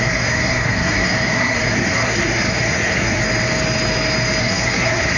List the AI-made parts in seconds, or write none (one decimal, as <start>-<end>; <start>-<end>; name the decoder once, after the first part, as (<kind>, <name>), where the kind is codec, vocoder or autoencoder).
0.0-3.2 (codec, SNAC); 4.4-5.2